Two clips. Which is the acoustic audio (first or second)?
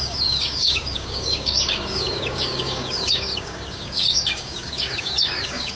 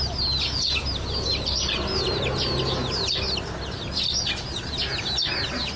second